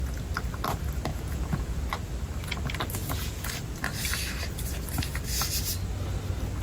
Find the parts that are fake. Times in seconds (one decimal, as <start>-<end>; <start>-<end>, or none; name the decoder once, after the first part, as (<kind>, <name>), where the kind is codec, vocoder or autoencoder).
1.1-1.8 (vocoder, Vocos); 3.0-3.5